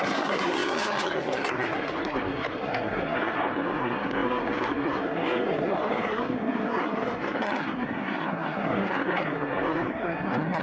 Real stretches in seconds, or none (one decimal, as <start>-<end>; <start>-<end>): none